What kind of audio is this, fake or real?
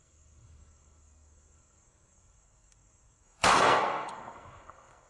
fake